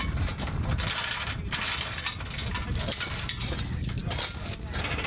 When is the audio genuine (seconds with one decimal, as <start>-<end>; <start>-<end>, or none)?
0.0-5.1